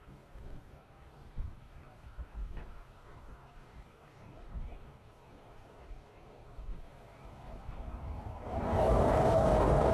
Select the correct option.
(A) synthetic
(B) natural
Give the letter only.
A